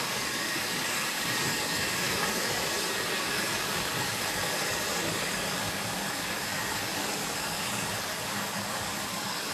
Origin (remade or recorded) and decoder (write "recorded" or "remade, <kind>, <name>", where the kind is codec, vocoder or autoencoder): remade, codec, DAC